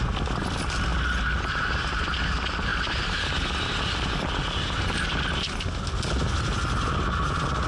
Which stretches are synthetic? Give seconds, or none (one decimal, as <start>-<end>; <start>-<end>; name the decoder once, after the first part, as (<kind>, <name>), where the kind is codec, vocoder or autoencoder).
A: none